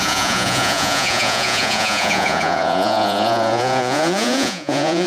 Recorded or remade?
remade